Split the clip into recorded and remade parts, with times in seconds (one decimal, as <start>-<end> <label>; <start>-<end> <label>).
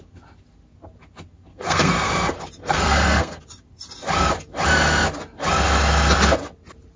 0.0-1.5 recorded; 1.5-2.1 remade; 2.1-2.6 recorded; 2.6-3.4 remade; 3.4-7.0 recorded